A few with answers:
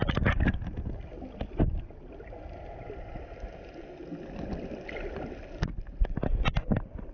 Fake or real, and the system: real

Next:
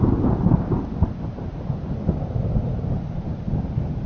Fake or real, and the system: real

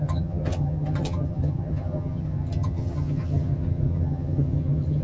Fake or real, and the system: fake, vocoder, HiFi-GAN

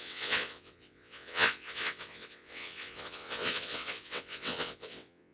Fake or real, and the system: fake, vocoder, WaveNeXt